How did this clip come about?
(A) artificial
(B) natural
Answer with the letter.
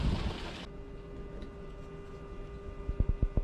B